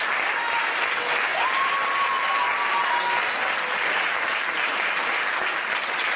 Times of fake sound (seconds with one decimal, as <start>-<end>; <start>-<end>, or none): none